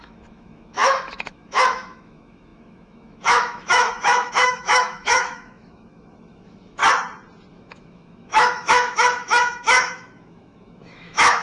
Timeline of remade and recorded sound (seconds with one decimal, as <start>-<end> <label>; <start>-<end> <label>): 0.0-6.8 remade; 6.8-7.5 recorded; 7.5-11.4 remade